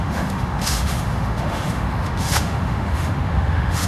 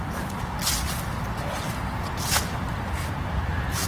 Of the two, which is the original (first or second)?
second